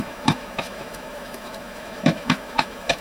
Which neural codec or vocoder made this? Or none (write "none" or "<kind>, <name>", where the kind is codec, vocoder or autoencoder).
autoencoder, DAC-VAE